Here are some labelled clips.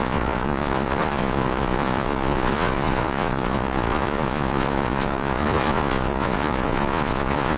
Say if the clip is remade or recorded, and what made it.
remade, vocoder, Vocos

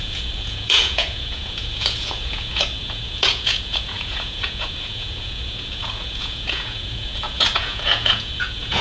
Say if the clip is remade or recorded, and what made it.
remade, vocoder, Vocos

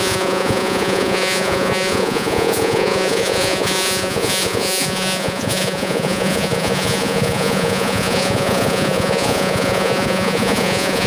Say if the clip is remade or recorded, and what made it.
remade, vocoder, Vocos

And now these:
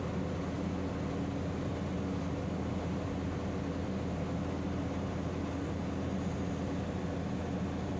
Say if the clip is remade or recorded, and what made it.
recorded